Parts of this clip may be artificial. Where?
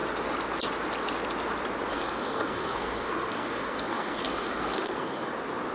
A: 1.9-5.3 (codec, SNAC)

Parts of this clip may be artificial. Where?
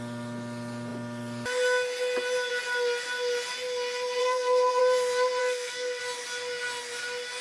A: 4.2-4.8 (codec, SNAC); 5.4-6.0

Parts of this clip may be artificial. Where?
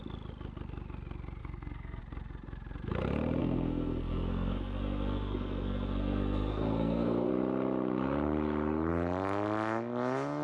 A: 1.4-2.0 (codec, SNAC); 3.4-7.3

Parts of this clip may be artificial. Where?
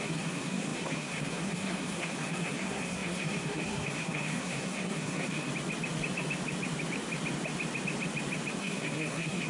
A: 0.0-5.5 (codec, SNAC); 8.6-9.5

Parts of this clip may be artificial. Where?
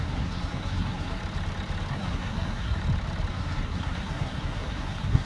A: 0.0-1.2 (codec, SNAC); 1.9-2.8; 3.3-5.3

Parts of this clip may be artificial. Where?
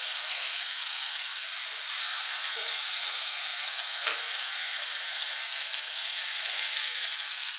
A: 0.0-1.5 (codec, SNAC); 2.0-7.6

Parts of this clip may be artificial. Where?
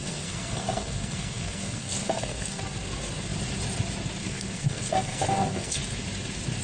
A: 0.0-2.6 (codec, SNAC); 4.2-5.8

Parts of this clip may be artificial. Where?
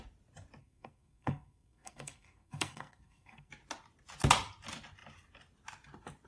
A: 0.6-3.5 (codec, SNAC)